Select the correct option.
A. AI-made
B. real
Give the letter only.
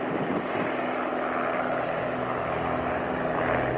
B